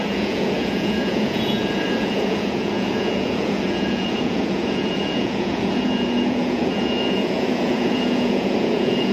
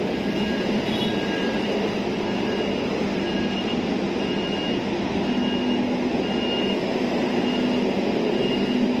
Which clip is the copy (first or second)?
first